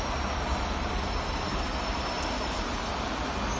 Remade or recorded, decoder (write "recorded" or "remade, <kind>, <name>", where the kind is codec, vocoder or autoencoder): recorded